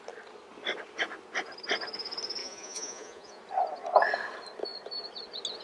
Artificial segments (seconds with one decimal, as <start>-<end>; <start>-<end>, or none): 2.4-3.4